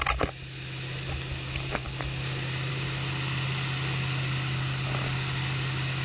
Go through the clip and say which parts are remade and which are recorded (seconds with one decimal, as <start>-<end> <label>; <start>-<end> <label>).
0.0-6.0 recorded